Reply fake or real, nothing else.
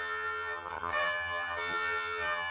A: fake